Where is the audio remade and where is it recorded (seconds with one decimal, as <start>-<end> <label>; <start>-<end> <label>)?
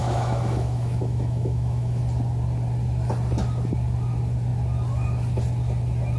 0.0-2.0 remade; 2.0-6.2 recorded